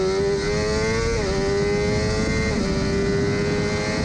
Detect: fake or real real